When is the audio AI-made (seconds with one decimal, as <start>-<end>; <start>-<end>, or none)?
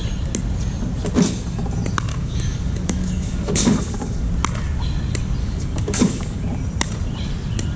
2.1-4.3; 5.4-6.4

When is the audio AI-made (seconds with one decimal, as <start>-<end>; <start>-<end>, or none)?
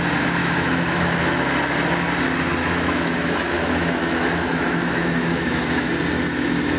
0.4-1.2; 2.6-5.9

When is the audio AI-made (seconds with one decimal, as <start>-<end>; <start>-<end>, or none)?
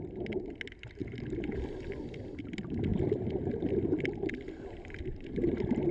2.9-3.5